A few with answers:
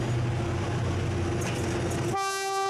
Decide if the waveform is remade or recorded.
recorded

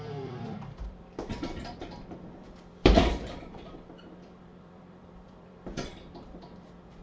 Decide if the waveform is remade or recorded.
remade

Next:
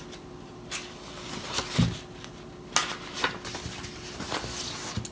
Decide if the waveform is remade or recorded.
recorded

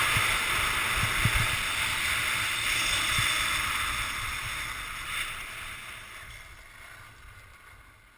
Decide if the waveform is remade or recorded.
recorded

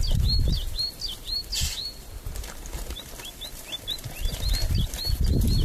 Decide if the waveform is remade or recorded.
recorded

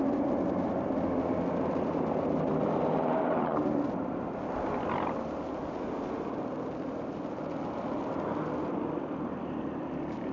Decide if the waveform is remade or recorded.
recorded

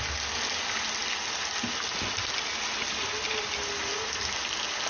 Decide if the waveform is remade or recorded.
recorded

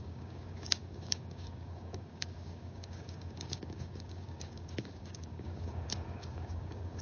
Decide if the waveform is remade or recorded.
remade